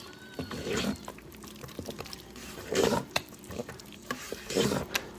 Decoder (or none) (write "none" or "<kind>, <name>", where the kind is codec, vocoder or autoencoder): vocoder, BigVGAN v2